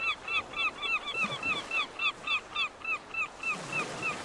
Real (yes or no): yes